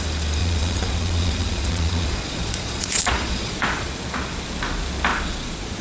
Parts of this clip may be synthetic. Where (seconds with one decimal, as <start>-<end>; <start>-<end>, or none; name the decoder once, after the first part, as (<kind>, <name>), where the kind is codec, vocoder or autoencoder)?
0.4-3.9 (vocoder, Vocos); 5.1-5.8